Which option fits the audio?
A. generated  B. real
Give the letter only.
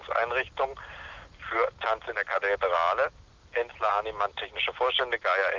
B